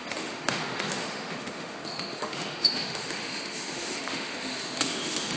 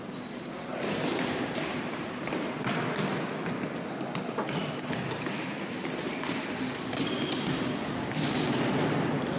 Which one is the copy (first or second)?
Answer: first